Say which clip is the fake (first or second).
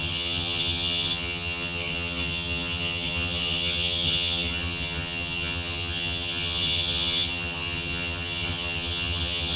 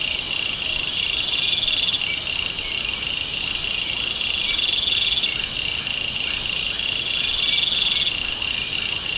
first